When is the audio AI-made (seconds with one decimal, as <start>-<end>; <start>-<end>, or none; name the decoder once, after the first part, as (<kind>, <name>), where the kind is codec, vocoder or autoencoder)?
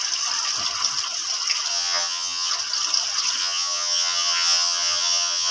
1.7-2.5 (vocoder, HiFi-GAN); 3.4-5.5